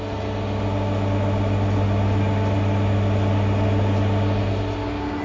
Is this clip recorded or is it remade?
recorded